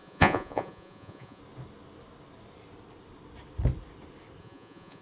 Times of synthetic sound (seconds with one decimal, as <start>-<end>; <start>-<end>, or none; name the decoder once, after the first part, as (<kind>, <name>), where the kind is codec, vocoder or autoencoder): 0.0-1.4 (vocoder, Vocos); 4.4-5.0